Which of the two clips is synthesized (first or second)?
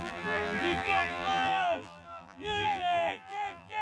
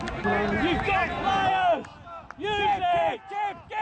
first